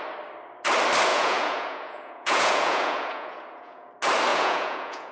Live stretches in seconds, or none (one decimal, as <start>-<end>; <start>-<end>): 0.0-1.1; 3.9-4.3